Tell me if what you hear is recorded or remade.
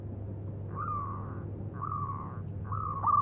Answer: recorded